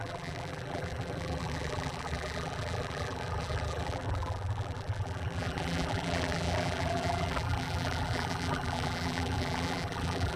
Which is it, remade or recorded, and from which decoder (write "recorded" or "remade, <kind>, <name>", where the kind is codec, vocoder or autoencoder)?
remade, vocoder, BigVGAN v2